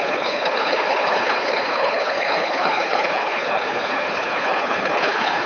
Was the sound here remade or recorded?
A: remade